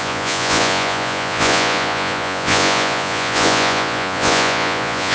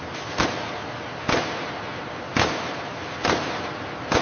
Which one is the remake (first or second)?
first